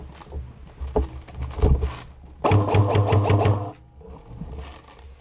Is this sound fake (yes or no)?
no